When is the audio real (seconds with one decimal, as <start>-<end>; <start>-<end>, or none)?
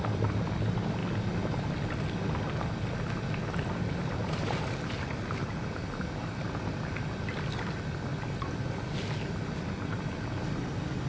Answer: 0.0-11.1